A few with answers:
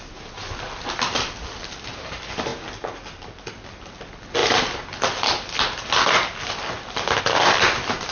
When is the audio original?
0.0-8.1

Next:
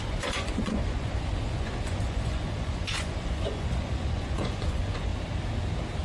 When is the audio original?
5.1-6.0

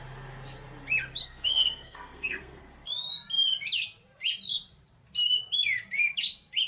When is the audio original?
0.0-1.2; 2.6-6.7

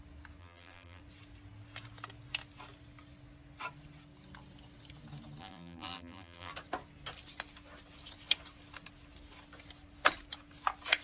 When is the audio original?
0.0-0.4; 1.0-5.4; 6.5-11.0

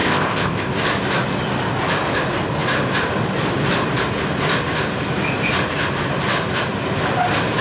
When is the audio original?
0.7-7.6

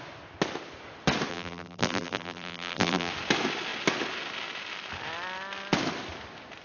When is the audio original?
0.0-1.3; 3.1-6.6

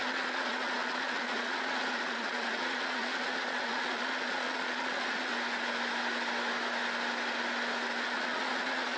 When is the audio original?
5.3-8.0

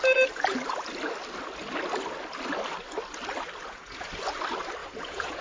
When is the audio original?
0.0-3.6; 4.1-4.8